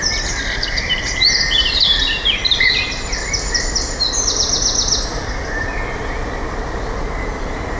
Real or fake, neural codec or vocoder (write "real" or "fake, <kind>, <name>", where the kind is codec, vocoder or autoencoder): fake, vocoder, BigVGAN v2